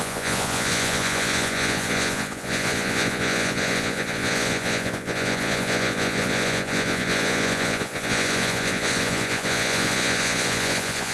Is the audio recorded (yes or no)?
no